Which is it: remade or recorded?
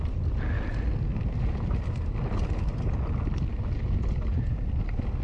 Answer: recorded